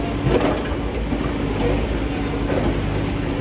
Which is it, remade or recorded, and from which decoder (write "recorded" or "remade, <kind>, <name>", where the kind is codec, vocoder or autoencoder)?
recorded